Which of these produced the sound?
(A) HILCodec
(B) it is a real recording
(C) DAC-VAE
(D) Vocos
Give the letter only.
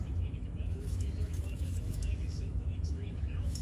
C